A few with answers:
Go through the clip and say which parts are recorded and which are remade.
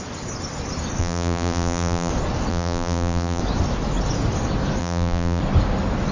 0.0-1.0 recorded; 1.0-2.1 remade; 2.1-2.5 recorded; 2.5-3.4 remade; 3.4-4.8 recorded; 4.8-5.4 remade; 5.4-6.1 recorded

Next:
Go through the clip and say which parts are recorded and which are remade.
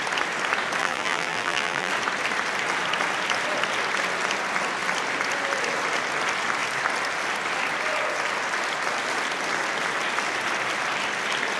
0.0-0.8 recorded; 0.8-1.9 remade; 1.9-11.6 recorded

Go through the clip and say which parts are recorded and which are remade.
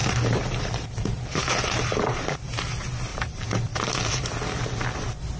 0.0-2.6 remade; 2.6-3.1 recorded; 3.1-3.9 remade; 3.9-5.4 recorded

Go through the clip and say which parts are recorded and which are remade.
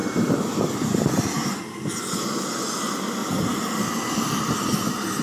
0.0-0.7 remade; 0.7-5.2 recorded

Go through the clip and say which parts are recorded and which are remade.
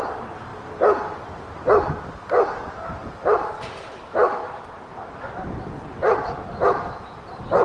0.0-3.0 recorded; 3.0-3.5 remade; 3.5-4.4 recorded; 4.4-5.1 remade; 5.1-7.6 recorded